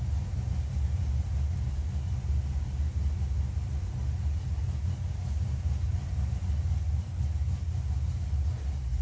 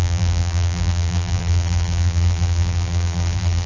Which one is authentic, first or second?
first